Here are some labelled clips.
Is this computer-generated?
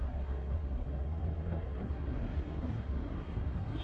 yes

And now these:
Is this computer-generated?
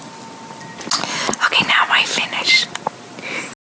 no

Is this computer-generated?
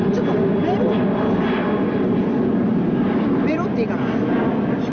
no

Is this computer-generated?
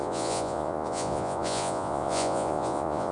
yes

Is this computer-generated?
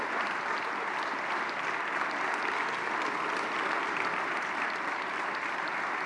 yes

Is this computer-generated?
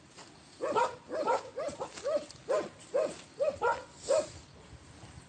no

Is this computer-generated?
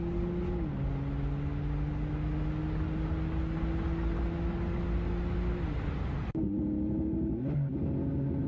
no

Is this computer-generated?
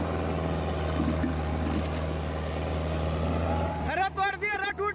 no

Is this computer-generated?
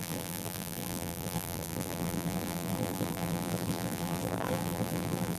yes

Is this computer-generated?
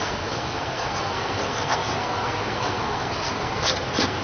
yes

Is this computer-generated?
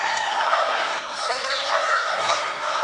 yes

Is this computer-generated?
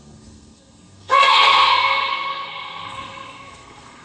yes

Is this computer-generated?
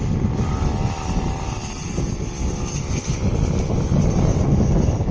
no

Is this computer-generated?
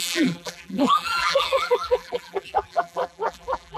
yes